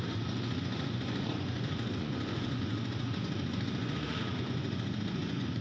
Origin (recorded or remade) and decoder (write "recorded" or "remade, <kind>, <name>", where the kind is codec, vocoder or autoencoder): remade, vocoder, Vocos